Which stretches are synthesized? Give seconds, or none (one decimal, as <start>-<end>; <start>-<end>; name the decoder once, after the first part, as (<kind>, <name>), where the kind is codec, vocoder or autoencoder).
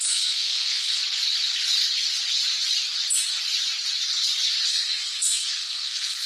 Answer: 0.0-1.0 (codec, SNAC); 4.7-6.3